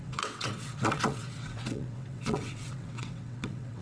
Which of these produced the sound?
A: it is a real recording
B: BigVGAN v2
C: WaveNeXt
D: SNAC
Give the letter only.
C